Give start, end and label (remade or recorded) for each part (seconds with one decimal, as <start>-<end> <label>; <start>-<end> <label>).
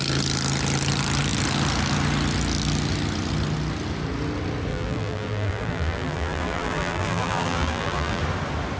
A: 0.0-4.7 recorded; 4.7-8.2 remade; 8.2-8.8 recorded